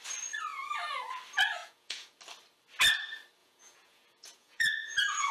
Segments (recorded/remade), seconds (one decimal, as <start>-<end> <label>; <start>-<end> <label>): 0.0-1.6 recorded; 1.6-2.2 remade; 2.2-3.4 recorded; 3.4-5.3 remade